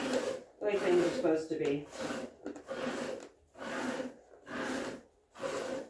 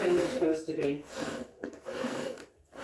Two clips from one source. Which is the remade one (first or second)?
second